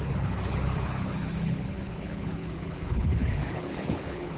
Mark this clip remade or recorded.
remade